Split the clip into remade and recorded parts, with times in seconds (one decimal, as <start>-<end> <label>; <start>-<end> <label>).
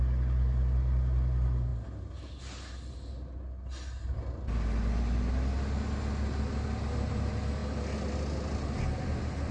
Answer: 0.0-9.5 recorded